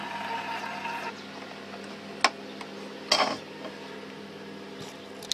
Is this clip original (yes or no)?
yes